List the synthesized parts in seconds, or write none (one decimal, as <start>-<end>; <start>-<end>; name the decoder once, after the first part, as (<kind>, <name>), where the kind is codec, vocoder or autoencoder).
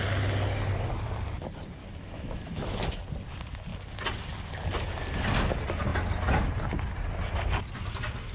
1.8-3.0 (autoencoder, DAC-VAE)